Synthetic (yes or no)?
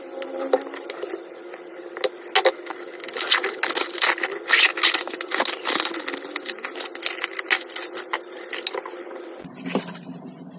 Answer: no